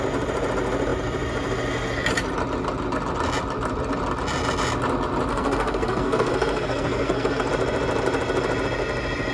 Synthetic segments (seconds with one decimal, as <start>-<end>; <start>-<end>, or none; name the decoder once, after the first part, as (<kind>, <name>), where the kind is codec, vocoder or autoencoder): 5.3-7.5 (codec, SNAC)